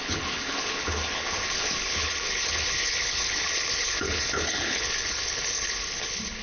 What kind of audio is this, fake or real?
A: fake